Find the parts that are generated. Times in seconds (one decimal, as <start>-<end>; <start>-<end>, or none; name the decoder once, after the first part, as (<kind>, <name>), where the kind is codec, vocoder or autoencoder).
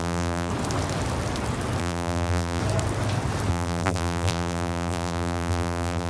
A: 0.0-0.5 (vocoder, BigVGAN v2); 1.8-2.6; 3.5-6.1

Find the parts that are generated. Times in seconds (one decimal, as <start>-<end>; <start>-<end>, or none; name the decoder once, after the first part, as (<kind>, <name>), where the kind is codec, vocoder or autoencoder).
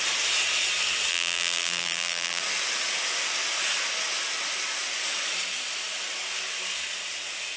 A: 1.1-2.4 (vocoder, BigVGAN v2)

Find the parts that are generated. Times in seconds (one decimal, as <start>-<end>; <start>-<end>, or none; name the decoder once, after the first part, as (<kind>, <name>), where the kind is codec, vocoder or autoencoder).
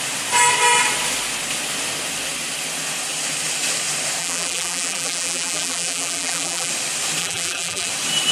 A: 4.2-6.7 (vocoder, BigVGAN v2); 7.2-7.9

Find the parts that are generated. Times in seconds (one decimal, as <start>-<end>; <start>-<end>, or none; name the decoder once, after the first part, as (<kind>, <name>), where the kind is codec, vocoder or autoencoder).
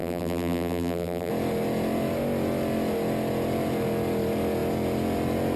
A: 0.0-1.3 (vocoder, BigVGAN v2)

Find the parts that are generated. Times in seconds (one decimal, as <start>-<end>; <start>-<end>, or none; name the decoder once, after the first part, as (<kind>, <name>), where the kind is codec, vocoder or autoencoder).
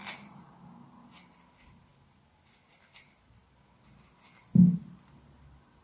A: none